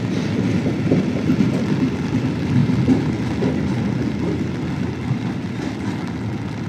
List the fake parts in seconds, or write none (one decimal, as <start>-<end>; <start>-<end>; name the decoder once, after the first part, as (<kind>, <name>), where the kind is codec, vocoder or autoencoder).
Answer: none